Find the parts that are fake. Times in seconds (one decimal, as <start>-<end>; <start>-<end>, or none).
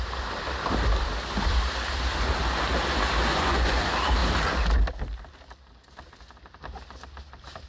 3.3-3.8